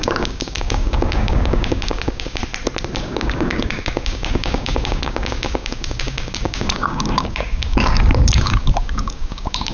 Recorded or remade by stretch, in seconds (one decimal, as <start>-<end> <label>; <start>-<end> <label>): 0.0-2.4 remade; 2.4-3.0 recorded; 3.0-9.7 remade